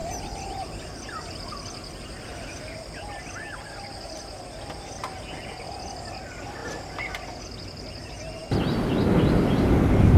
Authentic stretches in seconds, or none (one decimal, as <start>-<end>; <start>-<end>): 0.8-10.2